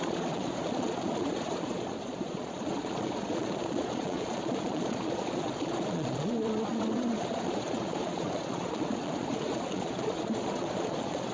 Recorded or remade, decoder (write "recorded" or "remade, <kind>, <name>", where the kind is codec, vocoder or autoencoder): remade, vocoder, Vocos